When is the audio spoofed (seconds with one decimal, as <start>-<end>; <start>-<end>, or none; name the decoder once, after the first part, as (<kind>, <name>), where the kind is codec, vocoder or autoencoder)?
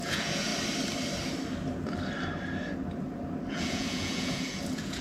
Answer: 0.0-0.5 (vocoder, Vocos); 3.5-5.0